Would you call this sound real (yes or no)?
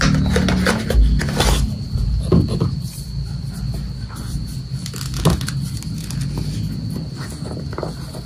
yes